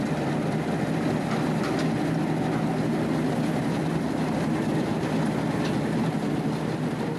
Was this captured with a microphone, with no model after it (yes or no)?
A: yes